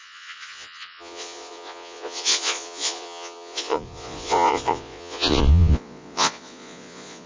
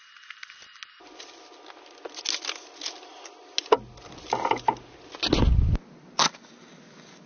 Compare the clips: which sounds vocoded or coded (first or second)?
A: first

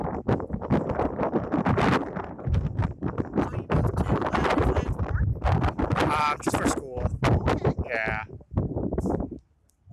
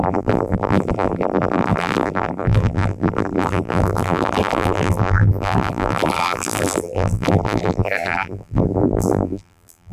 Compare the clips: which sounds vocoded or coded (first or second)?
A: second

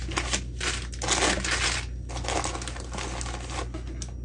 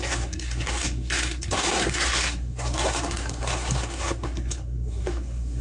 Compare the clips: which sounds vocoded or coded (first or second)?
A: second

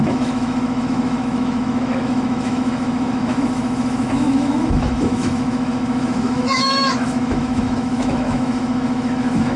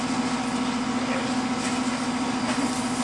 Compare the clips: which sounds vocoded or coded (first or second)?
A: first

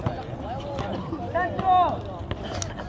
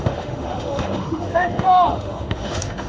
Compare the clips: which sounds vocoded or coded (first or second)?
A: second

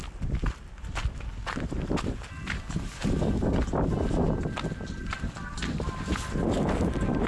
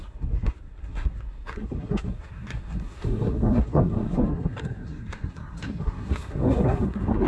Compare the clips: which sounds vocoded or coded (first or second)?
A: second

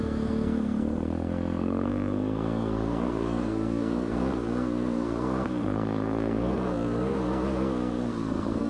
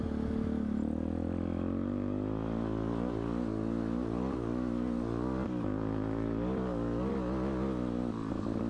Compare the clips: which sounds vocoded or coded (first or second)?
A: first